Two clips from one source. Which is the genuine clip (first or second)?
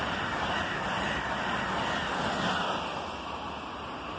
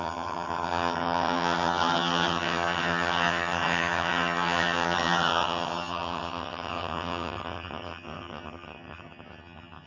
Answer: first